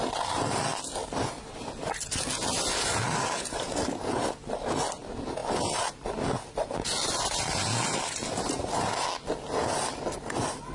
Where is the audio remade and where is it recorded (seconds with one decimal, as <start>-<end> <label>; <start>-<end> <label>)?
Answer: 0.0-0.7 recorded; 0.7-1.6 remade; 1.6-5.4 recorded; 5.4-6.1 remade; 6.1-10.7 recorded